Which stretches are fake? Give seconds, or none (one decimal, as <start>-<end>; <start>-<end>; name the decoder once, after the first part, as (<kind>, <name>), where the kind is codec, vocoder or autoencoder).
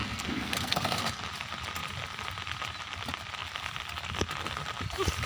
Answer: 0.0-1.2 (codec, SNAC)